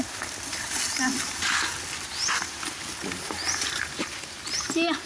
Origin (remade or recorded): recorded